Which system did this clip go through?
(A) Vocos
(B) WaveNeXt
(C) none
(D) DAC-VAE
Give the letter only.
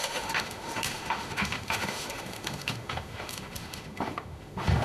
D